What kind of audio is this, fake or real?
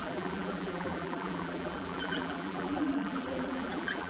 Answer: fake